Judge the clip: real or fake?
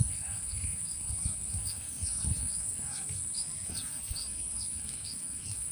fake